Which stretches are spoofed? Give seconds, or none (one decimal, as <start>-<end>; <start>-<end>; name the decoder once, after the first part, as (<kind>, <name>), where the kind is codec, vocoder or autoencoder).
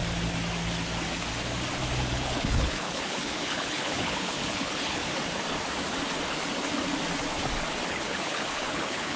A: 2.1-5.0 (codec, HILCodec); 7.9-9.2